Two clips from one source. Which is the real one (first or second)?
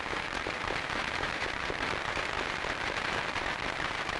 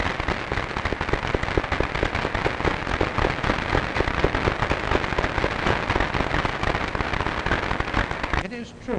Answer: second